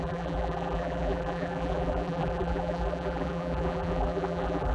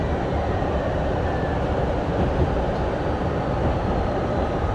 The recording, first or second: second